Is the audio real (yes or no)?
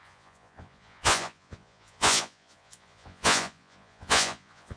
no